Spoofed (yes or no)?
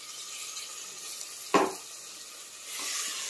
no